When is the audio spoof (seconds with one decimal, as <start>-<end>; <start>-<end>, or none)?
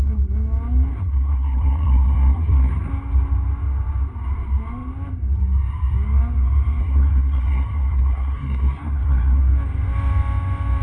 0.9-2.9; 6.8-9.4